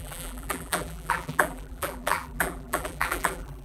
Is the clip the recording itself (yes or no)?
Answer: no